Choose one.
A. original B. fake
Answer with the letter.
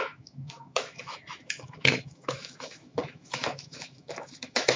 B